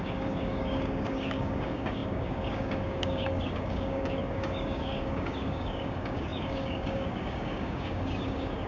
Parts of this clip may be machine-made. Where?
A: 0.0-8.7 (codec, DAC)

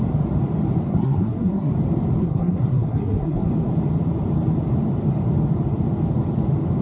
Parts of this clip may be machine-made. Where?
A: 0.9-1.7 (codec, SNAC); 2.2-3.5

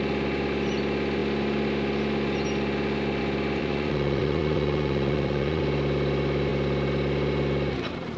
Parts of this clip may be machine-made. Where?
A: 3.6-5.6 (vocoder, Vocos)

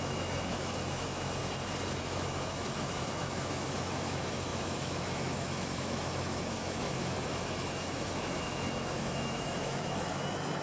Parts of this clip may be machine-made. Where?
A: 0.0-1.4 (autoencoder, DAC-VAE); 2.0-10.6

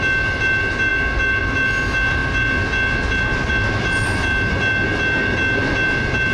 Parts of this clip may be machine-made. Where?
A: none

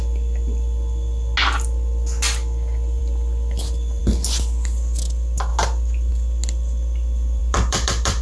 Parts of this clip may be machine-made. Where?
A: 7.4-8.2 (vocoder, BigVGAN v2)

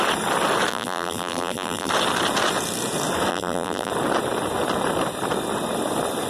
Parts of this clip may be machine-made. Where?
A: 0.7-1.9 (vocoder, BigVGAN v2); 3.3-3.9

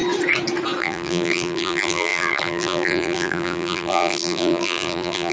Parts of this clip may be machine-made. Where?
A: 0.8-5.3 (vocoder, BigVGAN v2)